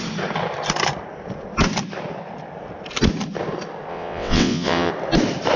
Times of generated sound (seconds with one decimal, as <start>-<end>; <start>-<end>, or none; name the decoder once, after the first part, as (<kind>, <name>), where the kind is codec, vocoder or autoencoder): 3.9-4.9 (vocoder, WaveNeXt)